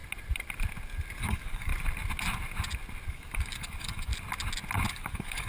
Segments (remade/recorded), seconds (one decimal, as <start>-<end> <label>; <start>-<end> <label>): 0.0-1.2 recorded; 1.2-1.7 remade; 1.7-3.1 recorded; 3.1-4.1 remade; 4.1-4.9 recorded; 4.9-5.5 remade